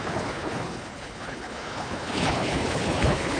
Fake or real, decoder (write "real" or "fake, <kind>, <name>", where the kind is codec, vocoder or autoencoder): fake, codec, HILCodec